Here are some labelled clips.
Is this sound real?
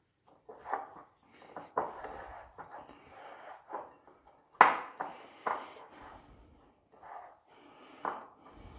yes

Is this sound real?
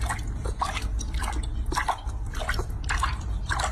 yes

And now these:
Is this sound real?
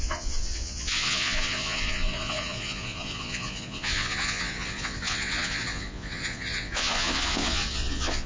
no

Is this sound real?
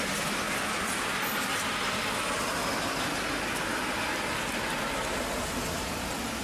yes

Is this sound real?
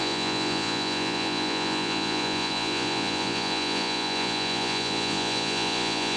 no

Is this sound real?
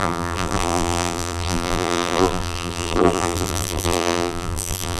no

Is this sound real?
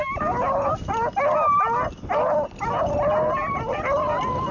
yes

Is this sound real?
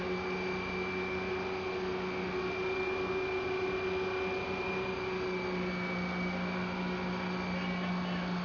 yes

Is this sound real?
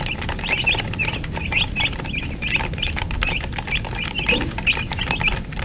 no